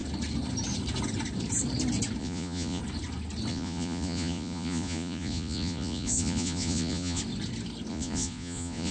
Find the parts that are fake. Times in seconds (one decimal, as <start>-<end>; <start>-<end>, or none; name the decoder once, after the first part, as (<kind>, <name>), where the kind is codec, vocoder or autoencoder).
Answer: 2.2-2.8 (vocoder, Vocos); 3.5-7.2; 7.9-8.9